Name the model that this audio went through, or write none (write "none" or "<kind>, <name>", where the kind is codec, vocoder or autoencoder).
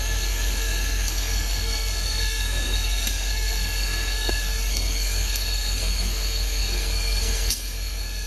codec, SNAC